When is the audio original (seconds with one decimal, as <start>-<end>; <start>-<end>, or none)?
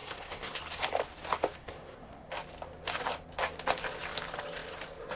0.6-1.6; 2.3-5.2